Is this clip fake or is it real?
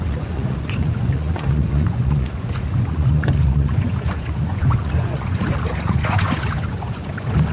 fake